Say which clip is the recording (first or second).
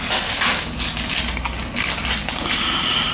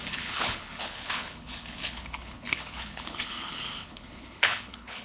first